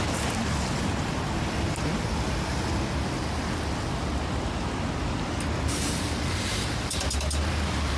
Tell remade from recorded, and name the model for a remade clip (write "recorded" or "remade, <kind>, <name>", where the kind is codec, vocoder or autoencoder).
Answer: recorded